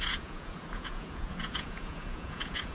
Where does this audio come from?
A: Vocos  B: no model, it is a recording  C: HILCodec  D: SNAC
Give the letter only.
A